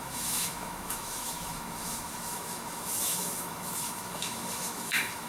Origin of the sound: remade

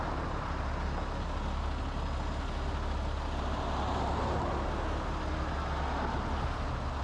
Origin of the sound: recorded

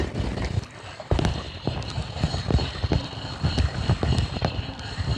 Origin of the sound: recorded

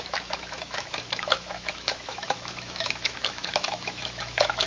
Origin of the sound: remade